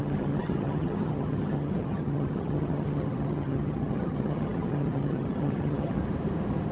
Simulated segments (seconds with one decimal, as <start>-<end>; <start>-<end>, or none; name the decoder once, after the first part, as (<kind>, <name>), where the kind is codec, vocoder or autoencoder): 0.0-6.0 (vocoder, HiFi-GAN)